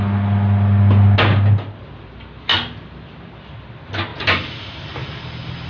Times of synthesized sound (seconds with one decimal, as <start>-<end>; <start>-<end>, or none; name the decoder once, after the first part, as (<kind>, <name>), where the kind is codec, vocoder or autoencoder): 4.1-4.7 (vocoder, BigVGAN v2)